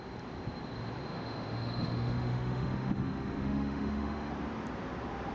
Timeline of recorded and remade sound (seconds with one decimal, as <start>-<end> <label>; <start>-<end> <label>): 0.0-1.1 recorded; 1.1-4.3 remade; 4.3-5.3 recorded